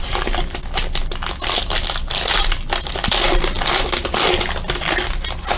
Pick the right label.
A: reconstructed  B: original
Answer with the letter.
B